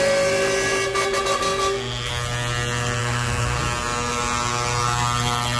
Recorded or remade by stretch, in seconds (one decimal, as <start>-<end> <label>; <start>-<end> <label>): 0.0-1.4 recorded; 1.4-2.1 remade; 2.1-3.0 recorded; 3.0-3.6 remade; 3.6-5.6 recorded